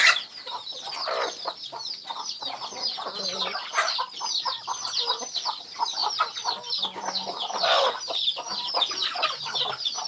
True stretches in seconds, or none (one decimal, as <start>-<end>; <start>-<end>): 1.0-5.1; 6.0-8.7